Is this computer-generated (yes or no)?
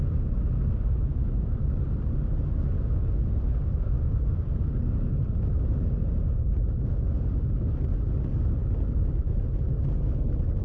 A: no